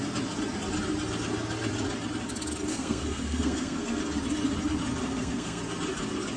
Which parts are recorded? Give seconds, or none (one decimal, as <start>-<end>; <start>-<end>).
0.0-2.7; 4.0-5.0; 5.6-6.4

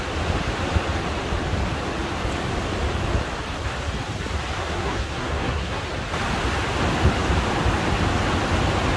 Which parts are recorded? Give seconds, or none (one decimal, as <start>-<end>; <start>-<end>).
0.0-4.6; 5.8-9.0

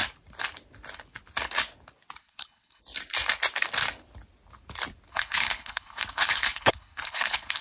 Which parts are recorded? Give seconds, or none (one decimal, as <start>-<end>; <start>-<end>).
0.0-2.2; 2.8-5.1

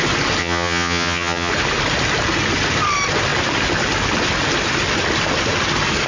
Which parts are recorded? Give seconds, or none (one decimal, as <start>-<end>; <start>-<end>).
0.0-0.4; 1.5-6.1

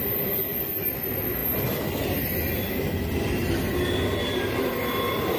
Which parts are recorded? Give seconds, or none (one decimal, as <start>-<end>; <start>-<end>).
0.0-5.4